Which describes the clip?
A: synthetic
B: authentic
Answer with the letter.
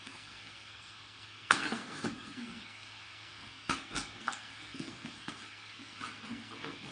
A